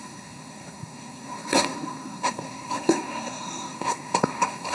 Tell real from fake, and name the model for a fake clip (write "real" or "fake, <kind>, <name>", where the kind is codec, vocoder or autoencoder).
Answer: fake, codec, SNAC